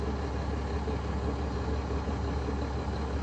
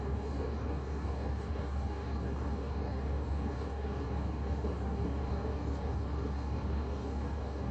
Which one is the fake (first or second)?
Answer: second